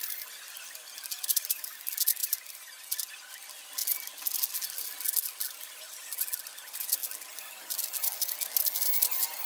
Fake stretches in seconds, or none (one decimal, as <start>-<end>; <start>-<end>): 1.3-1.8; 2.2-2.8